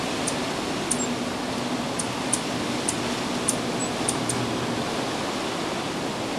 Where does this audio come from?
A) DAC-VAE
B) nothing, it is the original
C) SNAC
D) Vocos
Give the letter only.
B